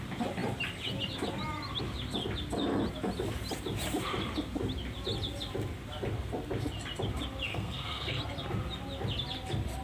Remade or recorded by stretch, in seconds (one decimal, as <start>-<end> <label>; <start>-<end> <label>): 0.0-7.5 recorded; 7.5-8.2 remade; 8.2-9.8 recorded